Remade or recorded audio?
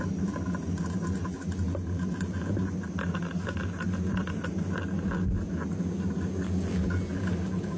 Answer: recorded